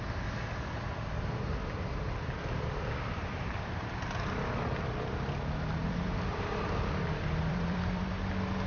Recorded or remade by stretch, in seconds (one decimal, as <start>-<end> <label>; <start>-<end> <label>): 0.0-5.8 recorded; 5.8-8.1 remade; 8.1-8.7 recorded